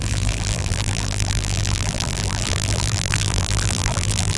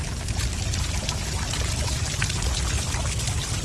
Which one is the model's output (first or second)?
first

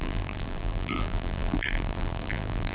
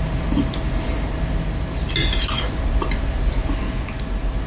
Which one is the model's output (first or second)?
first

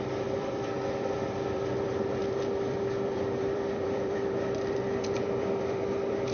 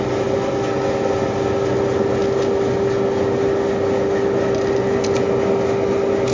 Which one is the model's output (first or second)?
first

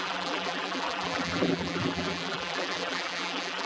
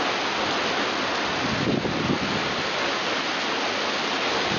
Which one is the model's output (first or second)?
first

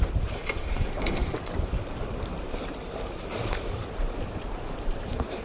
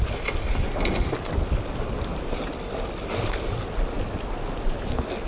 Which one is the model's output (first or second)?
first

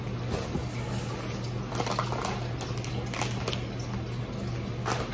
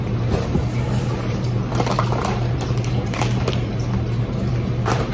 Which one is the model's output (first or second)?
second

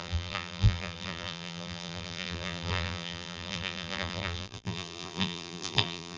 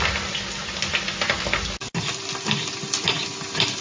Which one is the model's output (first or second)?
first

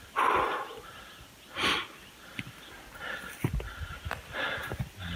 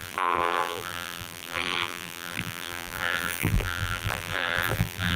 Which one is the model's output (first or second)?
second